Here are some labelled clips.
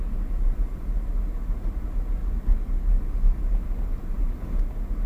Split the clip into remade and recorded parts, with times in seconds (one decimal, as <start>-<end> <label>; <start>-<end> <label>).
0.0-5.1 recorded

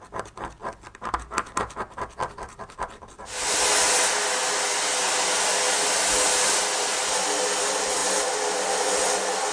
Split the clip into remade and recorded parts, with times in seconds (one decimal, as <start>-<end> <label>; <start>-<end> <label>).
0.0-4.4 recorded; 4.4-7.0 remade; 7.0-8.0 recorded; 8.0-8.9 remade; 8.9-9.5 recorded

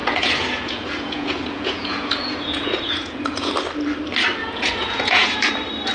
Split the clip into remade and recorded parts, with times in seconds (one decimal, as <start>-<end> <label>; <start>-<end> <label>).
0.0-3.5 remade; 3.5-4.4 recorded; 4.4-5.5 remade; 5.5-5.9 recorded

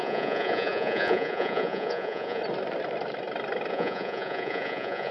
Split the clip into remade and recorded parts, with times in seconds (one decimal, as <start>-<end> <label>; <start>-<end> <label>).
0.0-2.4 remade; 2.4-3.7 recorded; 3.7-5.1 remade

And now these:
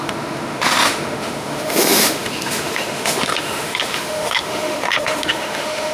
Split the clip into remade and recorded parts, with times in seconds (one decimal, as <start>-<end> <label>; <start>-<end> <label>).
0.0-5.9 remade

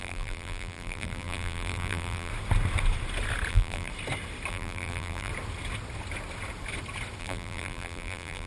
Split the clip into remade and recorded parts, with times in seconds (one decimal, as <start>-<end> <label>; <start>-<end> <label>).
0.0-2.3 remade; 2.3-3.5 recorded; 3.5-3.9 remade; 3.9-4.5 recorded; 4.5-5.3 remade; 5.3-7.2 recorded; 7.2-8.5 remade